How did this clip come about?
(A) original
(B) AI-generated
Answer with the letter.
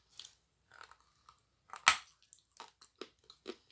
A